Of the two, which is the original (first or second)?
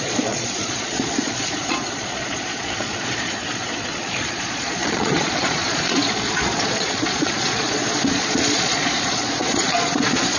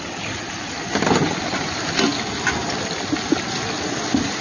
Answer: second